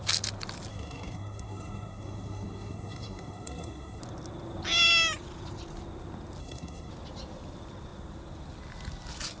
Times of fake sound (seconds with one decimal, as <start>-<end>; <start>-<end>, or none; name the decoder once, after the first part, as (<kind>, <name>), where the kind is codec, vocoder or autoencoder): 0.7-4.0 (codec, SNAC); 6.4-6.9